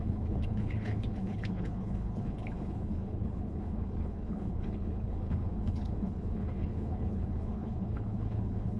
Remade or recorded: remade